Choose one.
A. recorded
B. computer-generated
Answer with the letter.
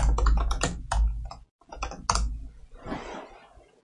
A